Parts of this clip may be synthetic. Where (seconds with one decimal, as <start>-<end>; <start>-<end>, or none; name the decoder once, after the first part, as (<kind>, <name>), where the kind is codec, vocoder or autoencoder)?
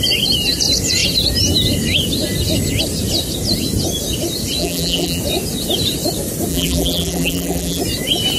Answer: 4.6-5.2 (vocoder, BigVGAN v2); 6.5-7.8